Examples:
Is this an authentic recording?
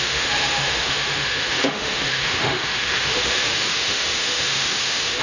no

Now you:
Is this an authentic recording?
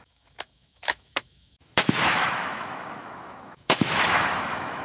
no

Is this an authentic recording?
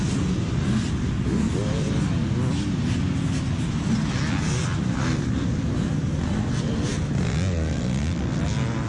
yes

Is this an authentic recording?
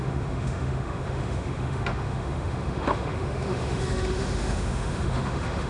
no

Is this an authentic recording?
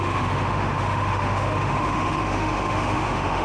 no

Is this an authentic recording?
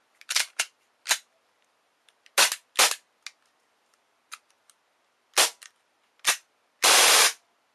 yes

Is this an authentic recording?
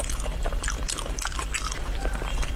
yes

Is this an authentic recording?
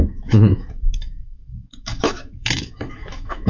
no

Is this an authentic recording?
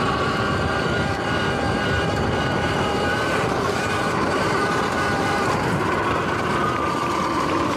yes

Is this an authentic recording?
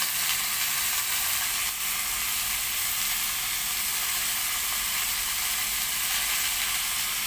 yes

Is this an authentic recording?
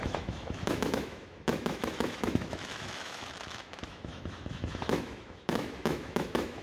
no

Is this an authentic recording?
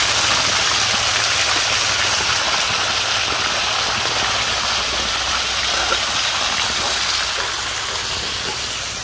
yes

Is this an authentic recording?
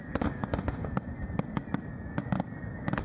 yes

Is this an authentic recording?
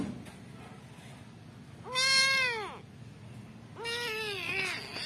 yes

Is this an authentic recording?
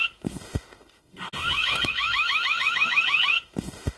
no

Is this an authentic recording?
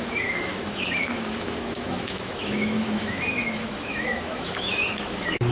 no